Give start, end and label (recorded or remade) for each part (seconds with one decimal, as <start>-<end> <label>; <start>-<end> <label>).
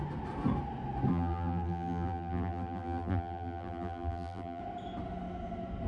0.0-1.1 recorded; 1.1-4.6 remade; 4.6-5.9 recorded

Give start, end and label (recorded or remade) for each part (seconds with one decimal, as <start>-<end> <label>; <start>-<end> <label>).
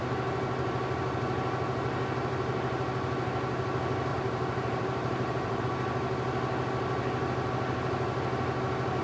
0.0-4.1 recorded; 4.1-5.6 remade; 5.6-9.0 recorded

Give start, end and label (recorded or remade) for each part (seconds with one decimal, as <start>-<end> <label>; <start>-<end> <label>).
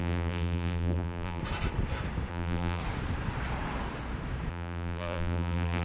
0.0-1.4 remade; 1.4-2.3 recorded; 2.3-2.8 remade; 2.8-4.5 recorded; 4.5-5.8 remade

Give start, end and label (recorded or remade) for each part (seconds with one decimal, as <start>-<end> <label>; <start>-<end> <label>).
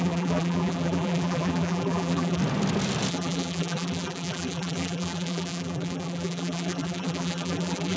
0.0-2.4 remade; 2.4-3.1 recorded; 3.1-8.0 remade